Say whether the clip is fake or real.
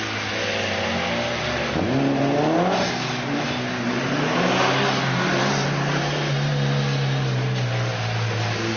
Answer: real